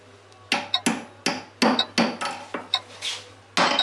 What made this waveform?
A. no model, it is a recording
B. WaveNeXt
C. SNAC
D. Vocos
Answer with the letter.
A